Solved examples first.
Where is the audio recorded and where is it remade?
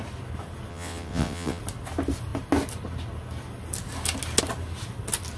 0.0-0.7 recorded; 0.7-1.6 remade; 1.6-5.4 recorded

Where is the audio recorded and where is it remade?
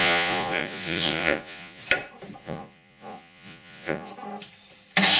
0.0-1.8 remade; 1.8-2.4 recorded; 2.4-4.1 remade; 4.1-5.2 recorded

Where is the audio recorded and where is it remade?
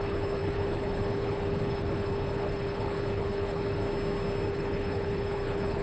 0.0-3.8 remade; 3.8-4.5 recorded; 4.5-5.8 remade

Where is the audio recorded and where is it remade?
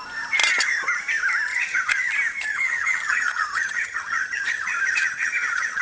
0.0-1.5 recorded; 1.5-2.1 remade; 2.1-2.5 recorded; 2.5-5.8 remade